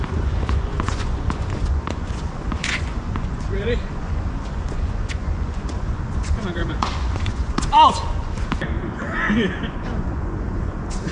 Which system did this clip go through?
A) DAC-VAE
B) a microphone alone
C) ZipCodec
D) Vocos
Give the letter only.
D